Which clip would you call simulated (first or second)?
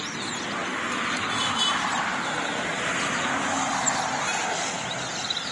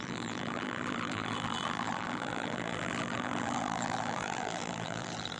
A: second